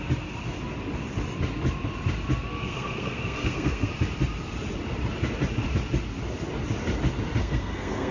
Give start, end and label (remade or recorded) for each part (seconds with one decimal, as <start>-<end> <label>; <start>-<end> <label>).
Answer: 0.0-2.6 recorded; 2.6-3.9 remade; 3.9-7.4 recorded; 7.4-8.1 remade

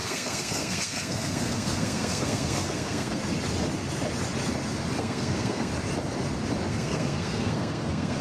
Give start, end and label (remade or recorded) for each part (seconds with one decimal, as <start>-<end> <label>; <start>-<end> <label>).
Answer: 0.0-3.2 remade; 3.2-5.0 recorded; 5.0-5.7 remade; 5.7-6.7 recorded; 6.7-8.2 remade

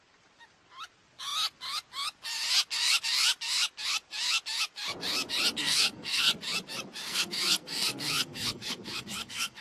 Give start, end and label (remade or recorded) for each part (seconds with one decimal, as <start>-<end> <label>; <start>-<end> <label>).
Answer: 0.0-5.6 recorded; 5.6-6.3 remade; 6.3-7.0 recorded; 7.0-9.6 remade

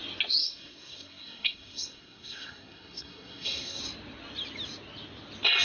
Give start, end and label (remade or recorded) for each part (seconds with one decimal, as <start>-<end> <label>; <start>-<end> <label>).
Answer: 0.0-0.4 recorded; 0.4-3.8 remade; 3.8-5.6 recorded

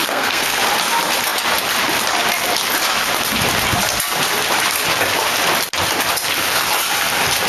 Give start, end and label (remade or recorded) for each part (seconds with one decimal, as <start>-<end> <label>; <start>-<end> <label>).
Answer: 0.0-0.6 remade; 0.6-7.5 recorded

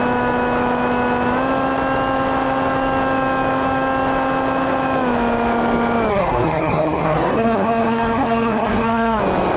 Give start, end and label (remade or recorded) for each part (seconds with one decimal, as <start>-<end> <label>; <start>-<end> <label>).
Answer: 0.0-6.1 recorded; 6.1-9.2 remade; 9.2-9.6 recorded